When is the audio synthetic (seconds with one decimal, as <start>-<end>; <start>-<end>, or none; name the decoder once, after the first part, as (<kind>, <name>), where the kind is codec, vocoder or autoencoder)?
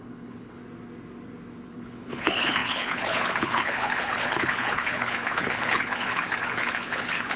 0.0-0.6 (codec, HILCodec); 1.7-7.4